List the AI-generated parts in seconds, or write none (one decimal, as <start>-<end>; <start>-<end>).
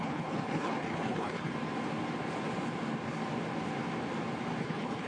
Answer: 0.0-1.5; 4.6-5.1